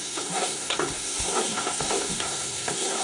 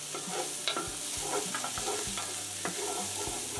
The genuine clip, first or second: second